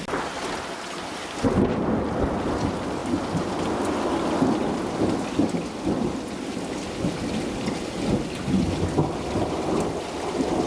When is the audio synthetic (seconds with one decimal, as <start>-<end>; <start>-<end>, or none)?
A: none